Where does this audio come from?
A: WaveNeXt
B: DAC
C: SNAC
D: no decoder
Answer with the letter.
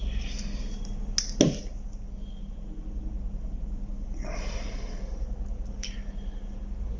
D